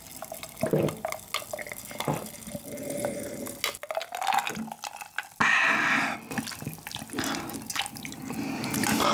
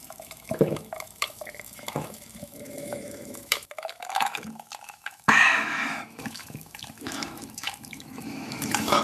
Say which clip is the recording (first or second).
first